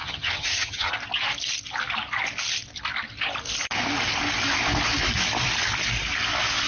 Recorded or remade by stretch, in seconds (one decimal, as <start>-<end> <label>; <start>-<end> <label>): 0.0-0.9 remade; 0.9-6.7 recorded